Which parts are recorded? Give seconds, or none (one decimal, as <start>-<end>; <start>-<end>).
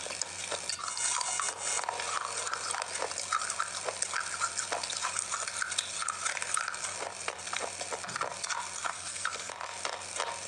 0.0-8.9; 9.5-10.5